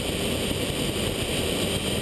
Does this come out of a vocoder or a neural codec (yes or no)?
no